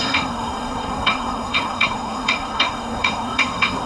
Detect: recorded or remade remade